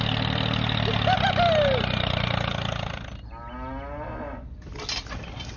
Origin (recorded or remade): recorded